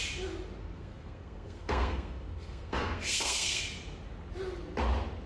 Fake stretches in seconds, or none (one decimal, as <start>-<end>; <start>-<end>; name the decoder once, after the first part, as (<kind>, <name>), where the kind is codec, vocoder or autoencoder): 0.6-3.6 (codec, SNAC)